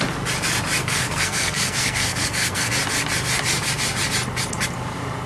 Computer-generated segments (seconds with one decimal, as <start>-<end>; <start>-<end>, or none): 0.8-2.7